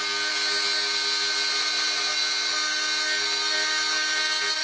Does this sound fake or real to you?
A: real